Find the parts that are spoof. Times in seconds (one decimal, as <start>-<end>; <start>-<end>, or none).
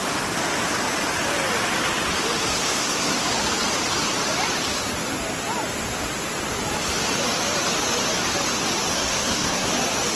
2.5-3.2; 8.9-9.7